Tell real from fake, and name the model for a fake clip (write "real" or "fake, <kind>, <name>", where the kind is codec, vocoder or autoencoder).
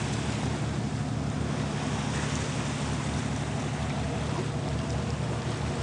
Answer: real